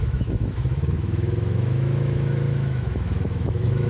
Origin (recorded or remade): remade